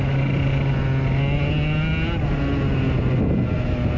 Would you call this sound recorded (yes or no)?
yes